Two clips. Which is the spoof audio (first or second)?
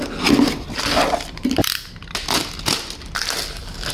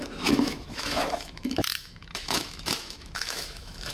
second